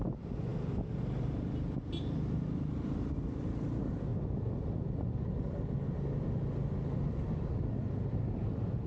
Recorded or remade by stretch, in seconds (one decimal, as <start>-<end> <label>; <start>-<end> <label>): 0.0-8.9 recorded